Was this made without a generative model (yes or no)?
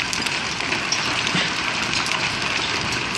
yes